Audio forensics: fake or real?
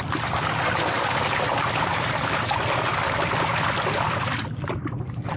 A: real